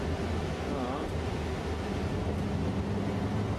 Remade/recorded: recorded